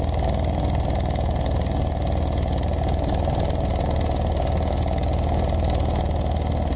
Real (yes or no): yes